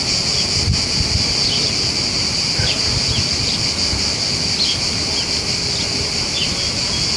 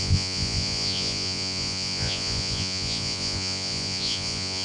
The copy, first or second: second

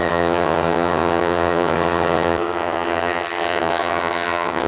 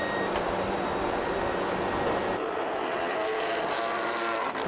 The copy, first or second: first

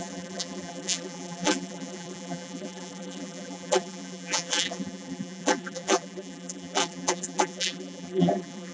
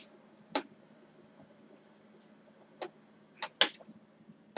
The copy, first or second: first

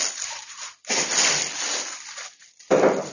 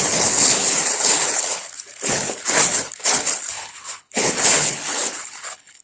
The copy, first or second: second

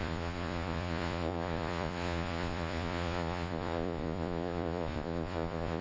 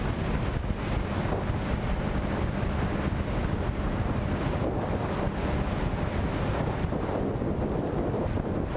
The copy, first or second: first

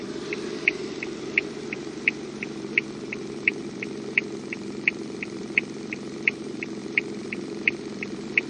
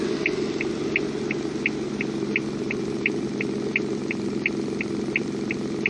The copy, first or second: first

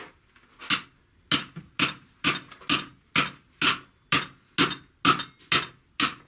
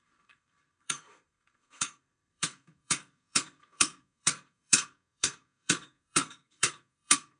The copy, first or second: second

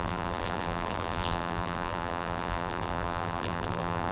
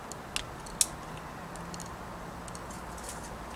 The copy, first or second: first